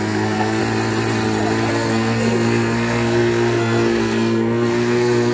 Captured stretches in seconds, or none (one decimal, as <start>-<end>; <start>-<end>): 0.6-1.7

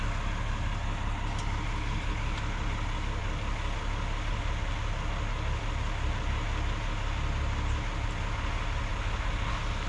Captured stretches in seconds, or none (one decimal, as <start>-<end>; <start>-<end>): 0.0-9.9

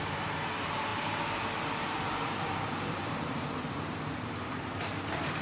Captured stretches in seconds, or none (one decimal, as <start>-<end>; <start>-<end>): none

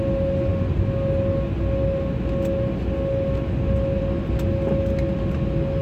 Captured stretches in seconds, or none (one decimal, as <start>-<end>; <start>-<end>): 0.0-5.8

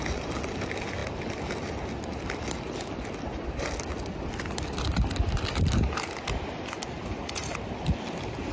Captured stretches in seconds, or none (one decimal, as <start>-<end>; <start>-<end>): 0.0-8.5

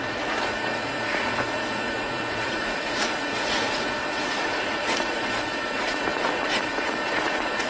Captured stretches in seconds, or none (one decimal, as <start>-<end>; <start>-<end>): none